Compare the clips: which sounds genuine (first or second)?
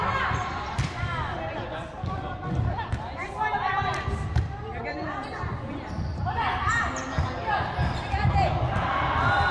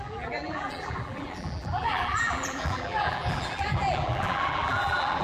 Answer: first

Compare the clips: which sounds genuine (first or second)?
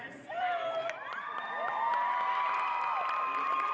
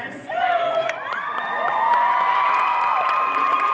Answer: first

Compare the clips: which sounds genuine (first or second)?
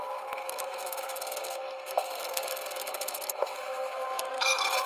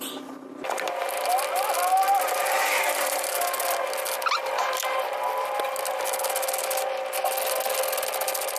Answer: second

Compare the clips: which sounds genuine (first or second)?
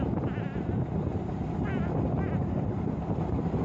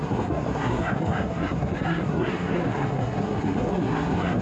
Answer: first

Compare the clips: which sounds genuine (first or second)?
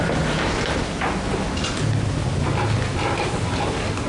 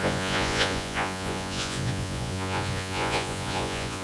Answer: first